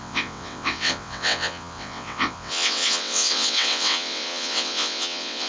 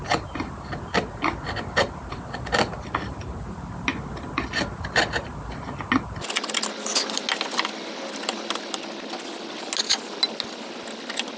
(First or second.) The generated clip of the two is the first